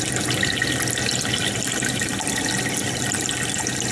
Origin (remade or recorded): recorded